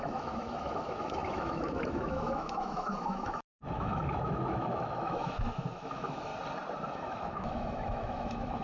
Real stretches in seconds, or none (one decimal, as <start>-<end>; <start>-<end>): 6.3-6.9